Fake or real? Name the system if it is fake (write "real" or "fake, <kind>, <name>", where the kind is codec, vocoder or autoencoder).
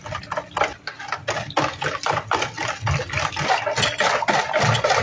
real